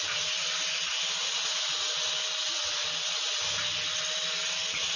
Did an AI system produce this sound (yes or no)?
no